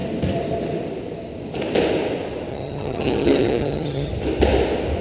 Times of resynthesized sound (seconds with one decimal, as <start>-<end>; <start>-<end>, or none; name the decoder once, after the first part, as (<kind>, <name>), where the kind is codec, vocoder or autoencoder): 2.5-4.1 (vocoder, HiFi-GAN)